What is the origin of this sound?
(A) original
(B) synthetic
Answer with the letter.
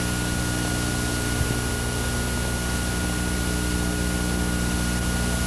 A